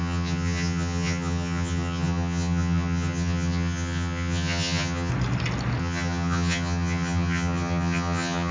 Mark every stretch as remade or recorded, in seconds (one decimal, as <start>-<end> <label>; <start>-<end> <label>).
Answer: 0.0-5.1 remade; 5.1-5.8 recorded; 5.8-8.5 remade